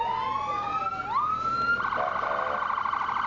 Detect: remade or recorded recorded